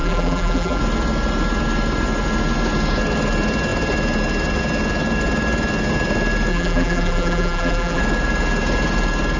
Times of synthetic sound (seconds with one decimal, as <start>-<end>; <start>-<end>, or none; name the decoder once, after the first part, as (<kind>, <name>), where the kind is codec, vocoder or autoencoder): 0.0-0.8 (vocoder, BigVGAN v2); 6.5-8.0